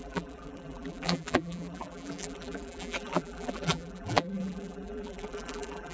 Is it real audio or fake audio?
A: fake